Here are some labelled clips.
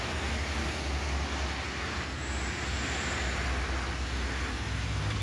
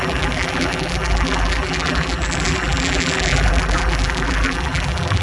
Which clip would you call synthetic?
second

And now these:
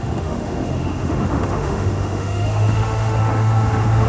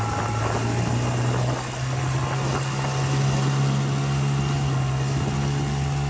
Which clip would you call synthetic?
first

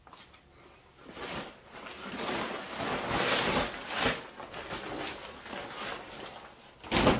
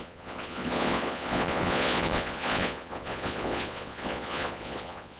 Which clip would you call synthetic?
second